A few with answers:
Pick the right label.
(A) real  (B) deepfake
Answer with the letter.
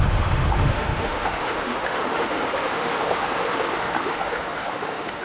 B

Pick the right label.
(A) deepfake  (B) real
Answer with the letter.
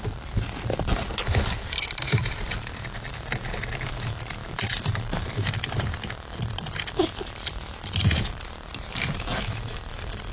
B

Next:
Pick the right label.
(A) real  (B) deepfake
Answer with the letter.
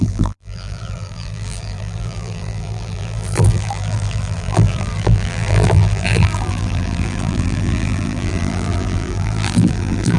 B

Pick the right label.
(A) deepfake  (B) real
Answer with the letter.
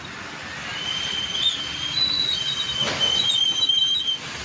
B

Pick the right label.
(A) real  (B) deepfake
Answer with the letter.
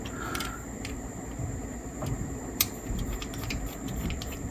B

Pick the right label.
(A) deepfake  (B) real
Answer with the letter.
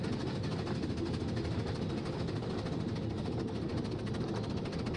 B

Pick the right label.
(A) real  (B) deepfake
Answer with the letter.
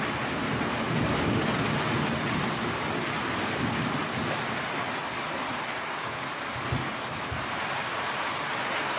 A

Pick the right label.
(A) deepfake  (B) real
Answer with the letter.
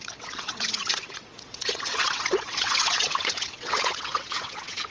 A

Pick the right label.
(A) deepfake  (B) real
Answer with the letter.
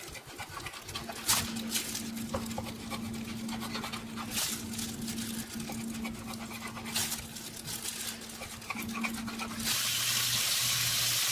B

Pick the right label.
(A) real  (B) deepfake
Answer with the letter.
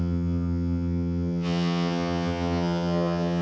B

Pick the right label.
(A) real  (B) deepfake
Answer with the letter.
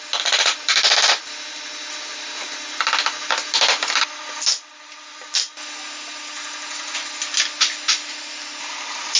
A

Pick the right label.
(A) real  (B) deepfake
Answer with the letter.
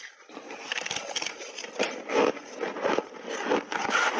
A